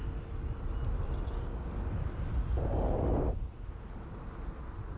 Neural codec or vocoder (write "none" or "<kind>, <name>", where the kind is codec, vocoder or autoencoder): none